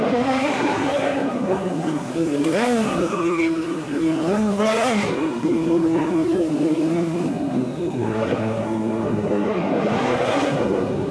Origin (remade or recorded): remade